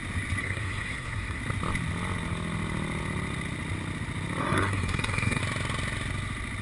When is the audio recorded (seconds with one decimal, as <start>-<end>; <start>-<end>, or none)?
0.0-0.4; 1.4-4.4; 5.4-6.6